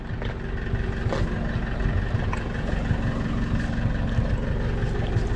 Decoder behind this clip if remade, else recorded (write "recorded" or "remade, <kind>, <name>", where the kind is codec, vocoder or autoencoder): recorded